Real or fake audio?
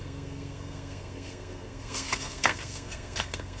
fake